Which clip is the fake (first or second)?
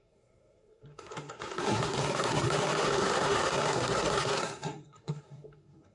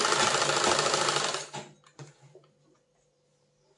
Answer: first